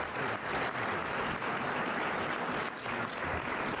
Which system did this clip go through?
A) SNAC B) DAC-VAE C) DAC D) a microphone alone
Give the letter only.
D